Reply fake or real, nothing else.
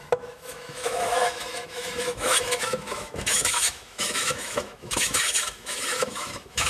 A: fake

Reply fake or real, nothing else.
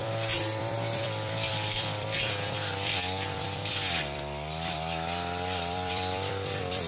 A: fake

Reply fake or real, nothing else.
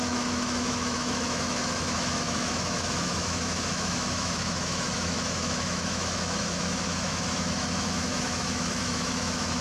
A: fake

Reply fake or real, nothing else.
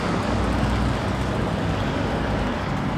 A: fake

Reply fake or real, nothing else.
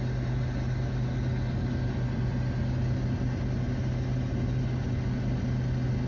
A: real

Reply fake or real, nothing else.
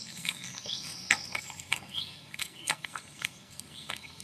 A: fake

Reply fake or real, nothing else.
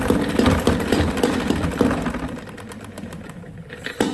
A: real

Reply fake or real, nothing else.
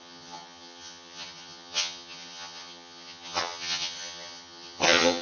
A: fake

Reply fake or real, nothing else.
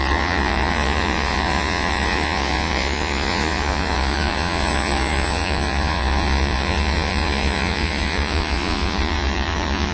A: fake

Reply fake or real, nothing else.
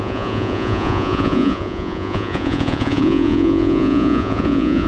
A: fake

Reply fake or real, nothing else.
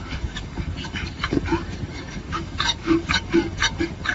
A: fake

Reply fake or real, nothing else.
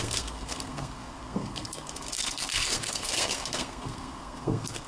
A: fake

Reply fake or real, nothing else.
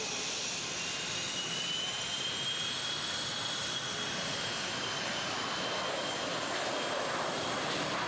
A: fake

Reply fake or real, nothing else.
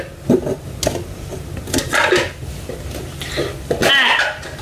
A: real